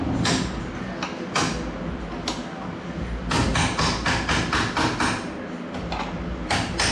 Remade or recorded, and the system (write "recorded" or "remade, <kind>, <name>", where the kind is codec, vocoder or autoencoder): recorded